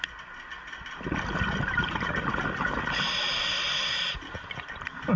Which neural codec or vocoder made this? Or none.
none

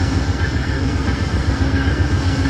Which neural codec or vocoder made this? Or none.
codec, SNAC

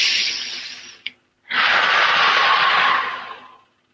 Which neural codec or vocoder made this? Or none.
none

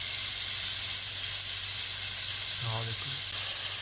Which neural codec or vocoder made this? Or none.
none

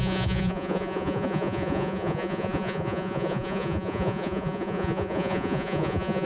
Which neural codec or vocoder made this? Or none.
vocoder, Vocos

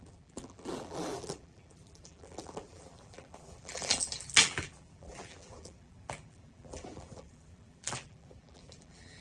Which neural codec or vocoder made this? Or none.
vocoder, BigVGAN v2